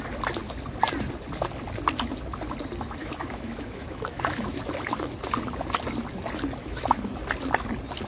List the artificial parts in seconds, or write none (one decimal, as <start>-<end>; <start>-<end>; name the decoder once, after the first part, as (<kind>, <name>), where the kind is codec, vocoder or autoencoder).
3.0-4.6 (autoencoder, DAC-VAE); 6.6-7.1